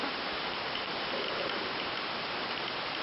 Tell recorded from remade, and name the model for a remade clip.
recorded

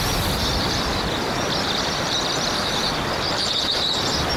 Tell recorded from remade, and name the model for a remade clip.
remade, vocoder, BigVGAN v2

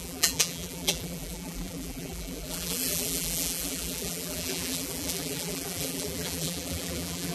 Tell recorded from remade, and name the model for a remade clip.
remade, vocoder, BigVGAN v2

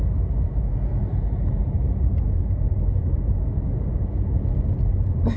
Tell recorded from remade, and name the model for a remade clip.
recorded